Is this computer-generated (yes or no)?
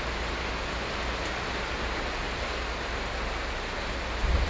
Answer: no